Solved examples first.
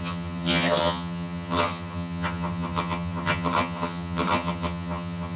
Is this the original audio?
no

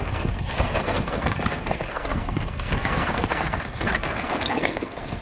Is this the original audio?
no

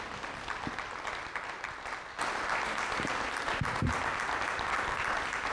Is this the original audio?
yes